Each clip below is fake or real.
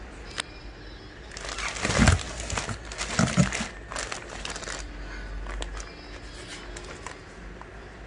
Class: real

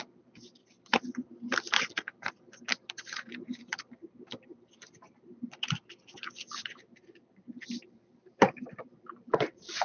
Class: fake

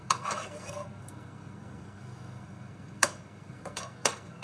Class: fake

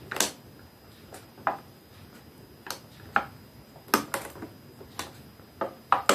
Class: real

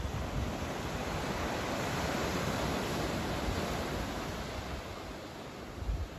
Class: real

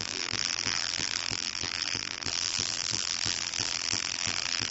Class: fake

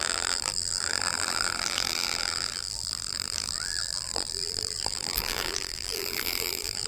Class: fake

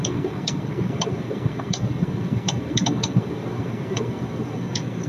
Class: fake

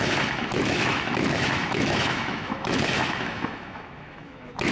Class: fake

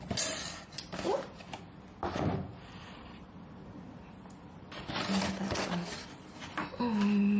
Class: real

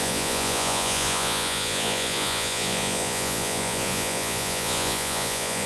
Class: fake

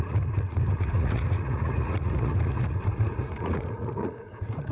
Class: fake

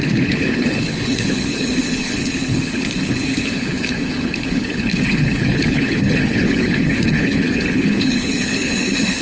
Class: fake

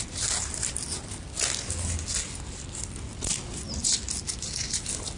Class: real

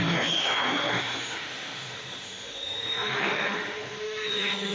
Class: fake